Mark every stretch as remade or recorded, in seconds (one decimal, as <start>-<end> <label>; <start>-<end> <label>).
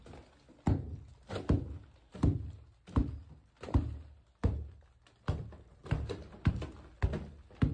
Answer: 0.0-7.7 recorded